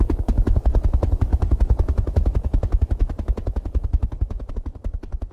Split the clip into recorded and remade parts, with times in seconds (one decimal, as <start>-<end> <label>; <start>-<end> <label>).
0.0-5.3 remade